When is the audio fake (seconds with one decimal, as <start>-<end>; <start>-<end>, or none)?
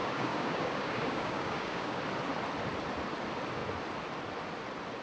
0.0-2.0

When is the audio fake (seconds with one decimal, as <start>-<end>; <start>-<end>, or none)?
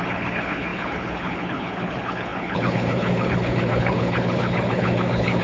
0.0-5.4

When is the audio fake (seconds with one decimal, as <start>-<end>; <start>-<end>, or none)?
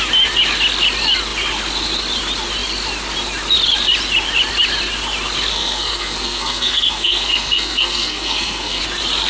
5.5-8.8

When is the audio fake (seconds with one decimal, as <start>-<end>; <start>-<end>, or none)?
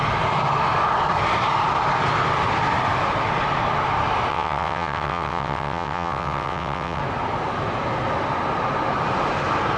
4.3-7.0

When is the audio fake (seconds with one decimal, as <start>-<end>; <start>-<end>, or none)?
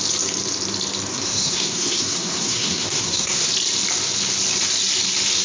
1.1-3.5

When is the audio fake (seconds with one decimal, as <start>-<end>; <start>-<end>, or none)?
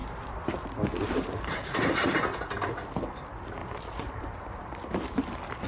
0.0-2.2; 3.6-5.2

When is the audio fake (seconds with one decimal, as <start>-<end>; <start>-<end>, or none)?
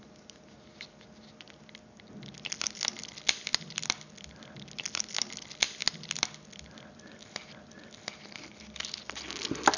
none